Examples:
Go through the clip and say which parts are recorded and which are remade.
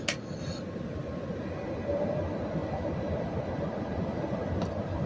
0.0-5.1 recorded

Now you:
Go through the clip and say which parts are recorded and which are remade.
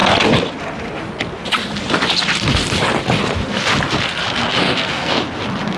0.0-4.6 recorded; 4.6-5.2 remade; 5.2-5.8 recorded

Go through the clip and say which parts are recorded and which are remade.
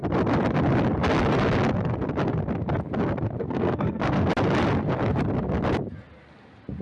0.0-3.4 recorded; 3.4-4.3 remade; 4.3-6.8 recorded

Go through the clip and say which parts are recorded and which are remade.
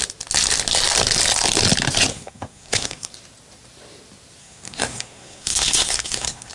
0.0-2.1 recorded; 2.1-3.1 remade; 3.1-4.4 recorded; 4.4-6.5 remade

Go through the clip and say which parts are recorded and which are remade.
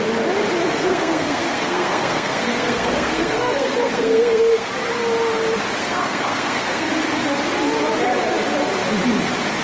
0.0-0.9 recorded; 0.9-4.7 remade; 4.7-5.8 recorded; 5.8-6.9 remade; 6.9-9.6 recorded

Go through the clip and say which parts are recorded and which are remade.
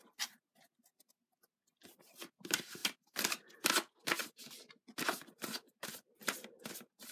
0.0-7.1 recorded